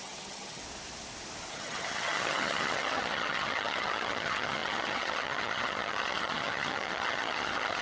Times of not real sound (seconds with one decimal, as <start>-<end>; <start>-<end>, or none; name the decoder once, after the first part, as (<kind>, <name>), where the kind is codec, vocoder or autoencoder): 0.0-0.6 (vocoder, HiFi-GAN); 1.5-7.8